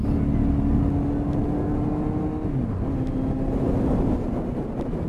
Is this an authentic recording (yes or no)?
yes